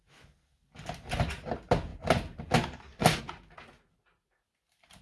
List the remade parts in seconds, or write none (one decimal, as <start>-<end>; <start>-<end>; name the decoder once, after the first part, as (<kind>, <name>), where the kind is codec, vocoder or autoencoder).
none